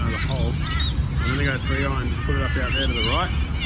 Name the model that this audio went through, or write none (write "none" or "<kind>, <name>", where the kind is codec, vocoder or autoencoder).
none